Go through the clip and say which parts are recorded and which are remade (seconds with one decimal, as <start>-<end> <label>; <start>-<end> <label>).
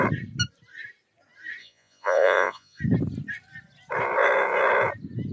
0.0-1.6 recorded; 1.6-2.8 remade; 2.8-5.3 recorded